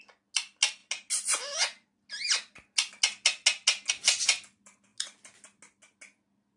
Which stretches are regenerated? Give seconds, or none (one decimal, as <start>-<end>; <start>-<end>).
none